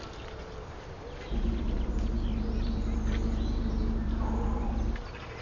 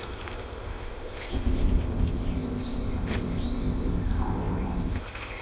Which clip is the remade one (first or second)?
second